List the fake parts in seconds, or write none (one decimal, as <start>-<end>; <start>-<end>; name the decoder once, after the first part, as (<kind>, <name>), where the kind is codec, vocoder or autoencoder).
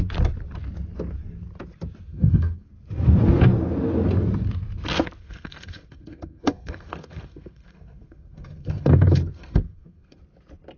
2.1-2.7 (codec, SNAC); 5.2-10.2